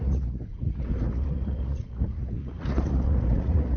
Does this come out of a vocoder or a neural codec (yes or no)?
yes